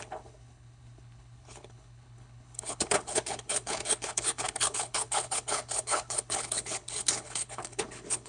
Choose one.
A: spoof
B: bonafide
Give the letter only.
A